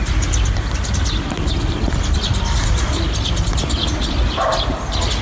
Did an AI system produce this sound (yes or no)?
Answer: no